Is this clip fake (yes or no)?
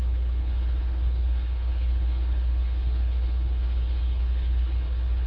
yes